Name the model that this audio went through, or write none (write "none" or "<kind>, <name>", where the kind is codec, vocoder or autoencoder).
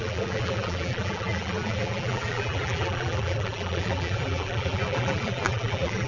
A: vocoder, BigVGAN v2